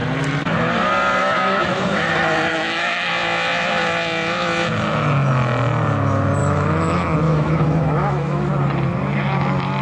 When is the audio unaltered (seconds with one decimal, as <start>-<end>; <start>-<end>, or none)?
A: 0.0-1.2; 2.1-2.5; 3.1-6.4; 8.5-9.8